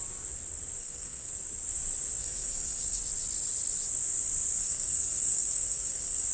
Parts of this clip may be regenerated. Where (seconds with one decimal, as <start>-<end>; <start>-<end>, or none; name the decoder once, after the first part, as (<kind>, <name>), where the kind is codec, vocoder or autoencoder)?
0.8-1.3 (codec, SNAC); 2.2-3.0; 4.6-6.3